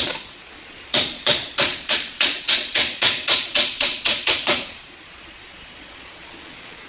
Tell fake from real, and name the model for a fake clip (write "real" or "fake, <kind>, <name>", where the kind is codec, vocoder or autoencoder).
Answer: fake, vocoder, Vocos